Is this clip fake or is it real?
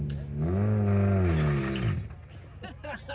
real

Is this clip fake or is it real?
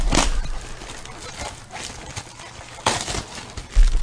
real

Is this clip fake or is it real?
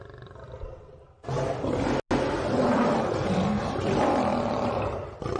real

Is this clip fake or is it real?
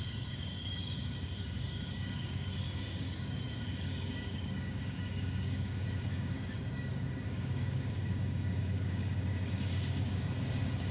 fake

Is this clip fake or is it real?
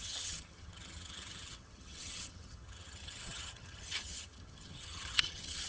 fake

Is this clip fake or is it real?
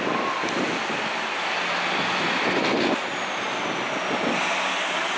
real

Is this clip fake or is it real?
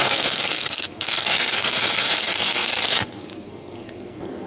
fake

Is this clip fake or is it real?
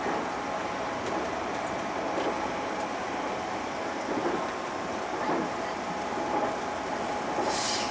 real